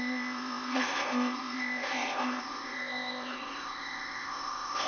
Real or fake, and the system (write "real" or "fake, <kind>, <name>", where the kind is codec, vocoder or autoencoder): fake, codec, ZipCodec